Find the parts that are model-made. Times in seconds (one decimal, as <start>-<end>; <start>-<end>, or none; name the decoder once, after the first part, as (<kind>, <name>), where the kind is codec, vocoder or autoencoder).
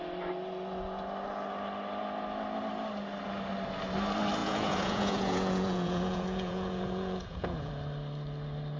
4.4-7.7 (vocoder, Vocos)